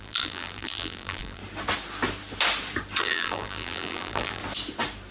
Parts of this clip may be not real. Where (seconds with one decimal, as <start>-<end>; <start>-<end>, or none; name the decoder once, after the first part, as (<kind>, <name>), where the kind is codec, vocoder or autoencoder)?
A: 0.0-1.4 (vocoder, BigVGAN v2); 3.0-4.4